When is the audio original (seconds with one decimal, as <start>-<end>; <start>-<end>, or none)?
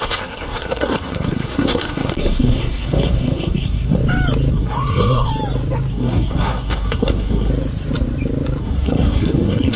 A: 4.0-4.5; 5.3-5.9; 7.5-8.6